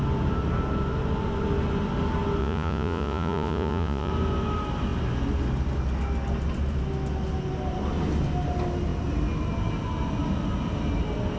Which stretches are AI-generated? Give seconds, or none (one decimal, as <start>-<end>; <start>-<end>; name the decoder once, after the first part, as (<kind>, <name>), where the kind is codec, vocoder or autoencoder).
2.4-4.1 (vocoder, Vocos)